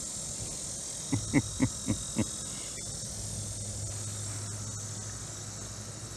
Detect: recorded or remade recorded